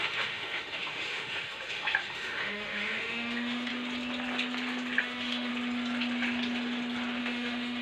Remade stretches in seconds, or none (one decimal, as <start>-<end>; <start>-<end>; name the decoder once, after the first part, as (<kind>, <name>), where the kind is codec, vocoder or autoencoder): 0.0-3.7 (autoencoder, DAC-VAE); 5.0-5.5; 7.2-7.8